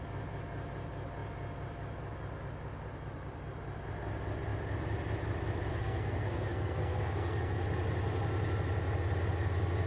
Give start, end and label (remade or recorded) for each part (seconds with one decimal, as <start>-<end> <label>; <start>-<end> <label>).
0.0-5.7 recorded; 5.7-7.6 remade; 7.6-9.9 recorded